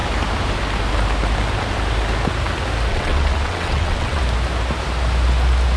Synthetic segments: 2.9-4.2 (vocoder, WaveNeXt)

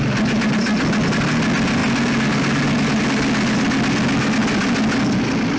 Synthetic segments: none